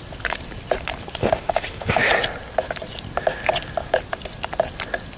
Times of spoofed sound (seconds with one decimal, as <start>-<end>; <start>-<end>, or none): 1.2-2.1